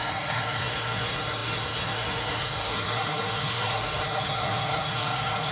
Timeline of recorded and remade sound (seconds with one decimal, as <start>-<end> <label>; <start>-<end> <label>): 0.0-5.5 remade